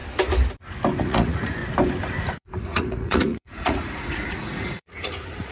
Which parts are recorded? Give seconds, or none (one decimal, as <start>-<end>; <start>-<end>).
0.0-1.0; 1.6-2.2